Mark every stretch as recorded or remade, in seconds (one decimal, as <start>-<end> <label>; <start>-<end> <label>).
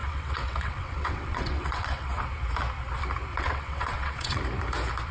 0.0-2.2 remade; 2.2-3.3 recorded; 3.3-4.4 remade; 4.4-5.1 recorded